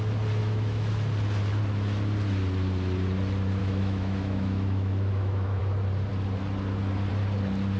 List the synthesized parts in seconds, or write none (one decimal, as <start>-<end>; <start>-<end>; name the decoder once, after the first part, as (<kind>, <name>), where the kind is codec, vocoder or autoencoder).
0.4-0.9 (autoencoder, DAC-VAE); 3.6-5.6